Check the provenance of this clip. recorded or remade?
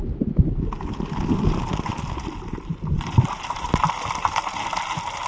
recorded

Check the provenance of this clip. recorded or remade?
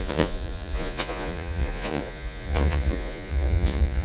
remade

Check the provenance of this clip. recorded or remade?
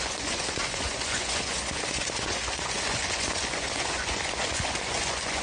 remade